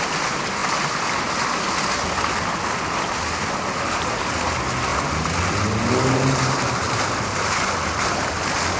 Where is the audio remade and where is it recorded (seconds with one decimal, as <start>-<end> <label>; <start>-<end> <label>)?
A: 0.0-8.8 recorded